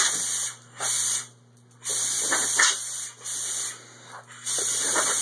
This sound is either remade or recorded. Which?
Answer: recorded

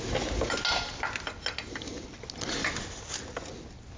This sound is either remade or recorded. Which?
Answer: recorded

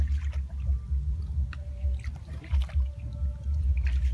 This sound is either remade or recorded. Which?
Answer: recorded